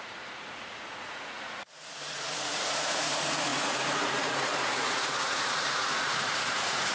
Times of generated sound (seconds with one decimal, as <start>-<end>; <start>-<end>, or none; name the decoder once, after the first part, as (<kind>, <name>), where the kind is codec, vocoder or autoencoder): 0.0-6.9 (vocoder, Vocos)